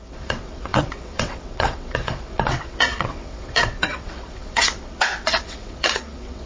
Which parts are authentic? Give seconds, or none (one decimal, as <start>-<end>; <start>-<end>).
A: none